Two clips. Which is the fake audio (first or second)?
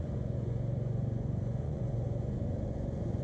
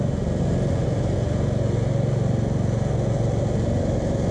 first